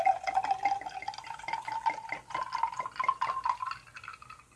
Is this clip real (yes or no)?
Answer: yes